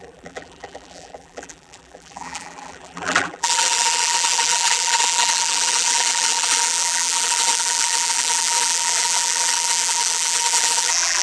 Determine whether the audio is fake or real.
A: fake